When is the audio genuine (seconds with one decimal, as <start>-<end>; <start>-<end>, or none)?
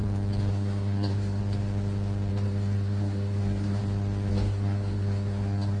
0.0-0.5; 1.4-2.3; 3.8-4.3